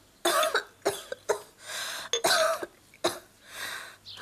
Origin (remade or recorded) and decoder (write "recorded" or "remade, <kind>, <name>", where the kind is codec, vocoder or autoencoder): recorded